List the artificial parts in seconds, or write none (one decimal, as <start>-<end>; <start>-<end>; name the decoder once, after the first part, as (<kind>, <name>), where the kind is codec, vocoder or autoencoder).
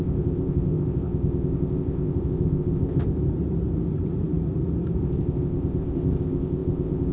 0.0-3.2 (codec, ZipCodec); 5.0-7.1